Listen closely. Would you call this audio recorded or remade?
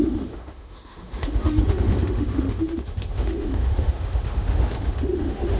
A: remade